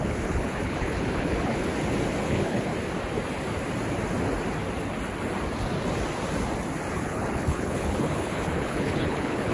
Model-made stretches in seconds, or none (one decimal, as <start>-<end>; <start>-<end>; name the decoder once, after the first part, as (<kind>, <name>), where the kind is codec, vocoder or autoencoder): 0.0-1.7 (codec, HILCodec); 2.2-2.7; 6.9-9.5